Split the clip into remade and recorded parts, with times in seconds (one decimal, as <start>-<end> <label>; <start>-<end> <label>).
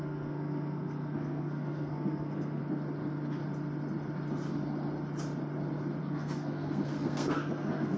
0.0-2.6 remade; 2.6-6.0 recorded; 6.0-8.0 remade